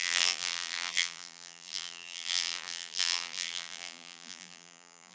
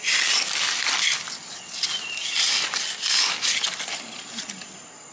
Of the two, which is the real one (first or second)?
second